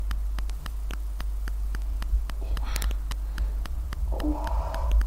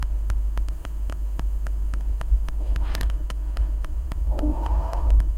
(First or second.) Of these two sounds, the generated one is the second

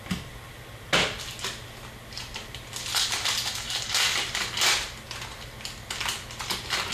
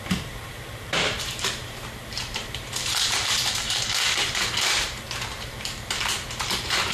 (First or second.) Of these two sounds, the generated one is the second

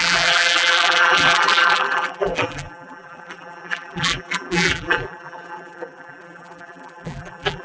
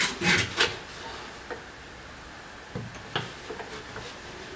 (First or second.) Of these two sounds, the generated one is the first